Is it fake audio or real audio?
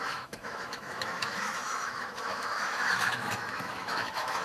fake